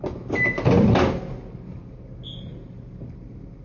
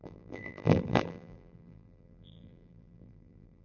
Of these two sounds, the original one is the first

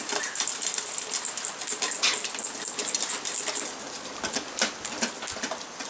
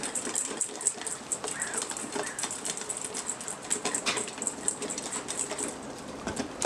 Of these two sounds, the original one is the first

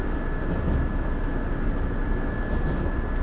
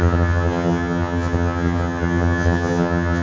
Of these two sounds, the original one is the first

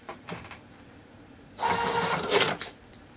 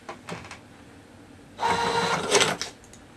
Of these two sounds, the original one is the second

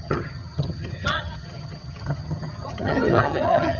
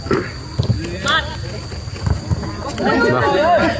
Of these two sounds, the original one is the second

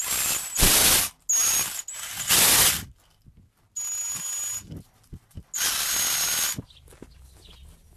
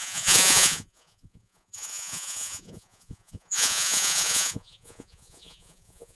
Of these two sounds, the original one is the first